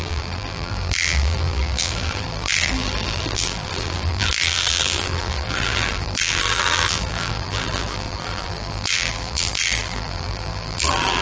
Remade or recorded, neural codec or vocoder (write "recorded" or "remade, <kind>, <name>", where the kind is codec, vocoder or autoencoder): remade, vocoder, BigVGAN v2